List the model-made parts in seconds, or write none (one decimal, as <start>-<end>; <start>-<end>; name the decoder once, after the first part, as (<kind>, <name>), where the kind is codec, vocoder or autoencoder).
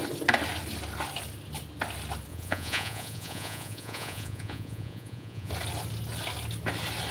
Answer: 2.3-5.5 (vocoder, Vocos)